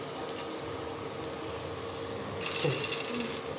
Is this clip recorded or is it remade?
recorded